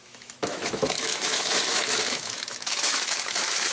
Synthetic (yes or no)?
yes